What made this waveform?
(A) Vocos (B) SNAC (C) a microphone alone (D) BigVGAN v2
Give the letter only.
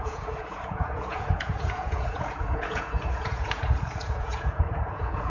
A